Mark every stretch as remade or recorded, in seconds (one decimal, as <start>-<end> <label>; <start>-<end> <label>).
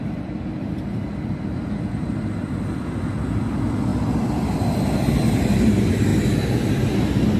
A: 0.0-7.4 recorded